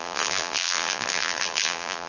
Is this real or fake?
fake